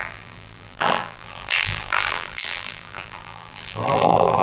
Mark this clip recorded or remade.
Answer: remade